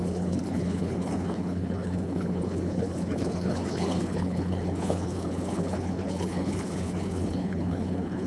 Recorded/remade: remade